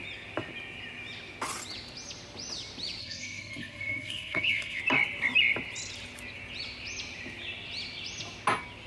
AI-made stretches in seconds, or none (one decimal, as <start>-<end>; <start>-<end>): 3.0-4.8